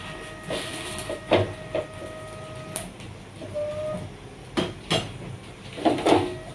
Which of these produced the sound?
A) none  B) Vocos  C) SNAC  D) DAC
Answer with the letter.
A